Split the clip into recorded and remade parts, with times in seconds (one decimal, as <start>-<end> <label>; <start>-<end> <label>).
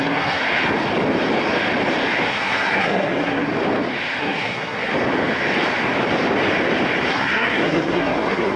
0.0-0.4 remade; 0.4-2.3 recorded; 2.3-3.5 remade; 3.5-4.2 recorded; 4.2-4.9 remade; 4.9-7.1 recorded; 7.1-8.6 remade